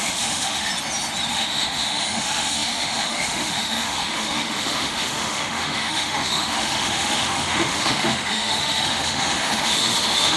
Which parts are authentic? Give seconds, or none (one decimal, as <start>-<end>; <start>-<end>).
0.7-1.3